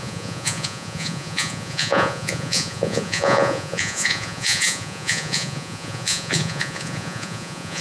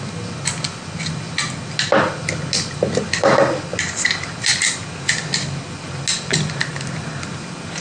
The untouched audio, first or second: second